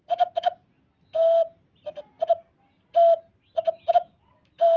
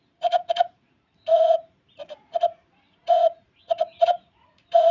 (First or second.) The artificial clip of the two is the second